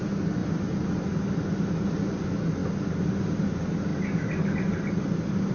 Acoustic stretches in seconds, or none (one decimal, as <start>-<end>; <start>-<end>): 0.0-5.5